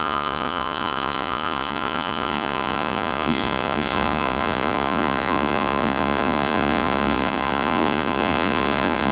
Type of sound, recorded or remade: remade